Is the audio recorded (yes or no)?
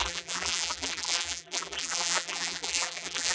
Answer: no